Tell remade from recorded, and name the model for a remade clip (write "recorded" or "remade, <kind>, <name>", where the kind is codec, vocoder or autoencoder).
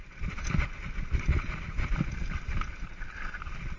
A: recorded